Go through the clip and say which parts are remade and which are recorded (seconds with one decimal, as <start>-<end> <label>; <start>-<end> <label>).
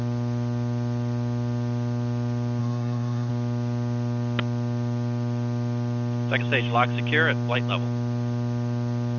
0.0-2.6 recorded; 2.6-3.3 remade; 3.3-9.2 recorded